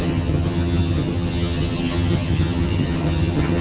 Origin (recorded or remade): remade